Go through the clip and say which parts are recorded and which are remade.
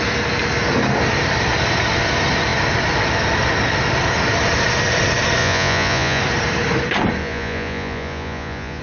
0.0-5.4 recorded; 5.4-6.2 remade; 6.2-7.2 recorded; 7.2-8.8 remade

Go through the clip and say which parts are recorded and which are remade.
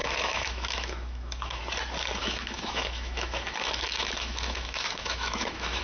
0.0-1.6 remade; 1.6-2.2 recorded; 2.2-5.8 remade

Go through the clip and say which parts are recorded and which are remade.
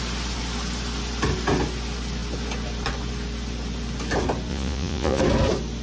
0.0-4.5 recorded; 4.5-5.2 remade; 5.2-5.8 recorded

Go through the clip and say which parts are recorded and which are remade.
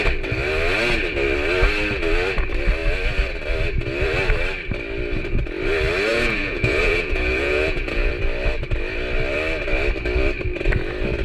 0.0-6.1 recorded; 6.1-8.1 remade; 8.1-11.2 recorded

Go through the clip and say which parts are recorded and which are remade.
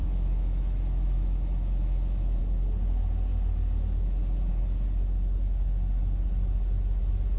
0.0-2.4 remade; 2.4-7.4 recorded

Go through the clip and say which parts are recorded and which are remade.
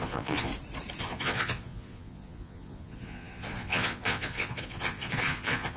0.0-0.5 remade; 0.5-1.0 recorded; 1.0-5.8 remade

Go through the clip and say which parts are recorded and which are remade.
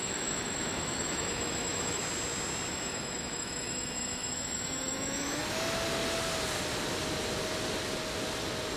0.0-2.0 remade; 2.0-2.7 recorded; 2.7-5.4 remade; 5.4-8.8 recorded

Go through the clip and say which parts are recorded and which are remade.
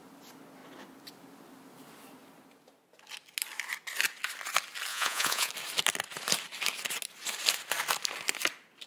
0.0-4.9 recorded; 4.9-5.5 remade; 5.5-8.9 recorded